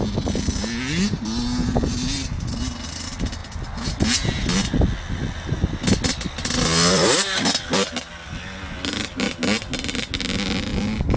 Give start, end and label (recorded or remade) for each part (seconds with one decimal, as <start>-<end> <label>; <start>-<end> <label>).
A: 0.0-11.2 recorded